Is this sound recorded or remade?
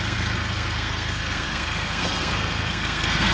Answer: remade